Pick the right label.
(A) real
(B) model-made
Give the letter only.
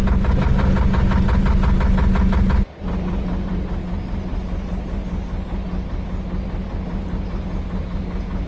A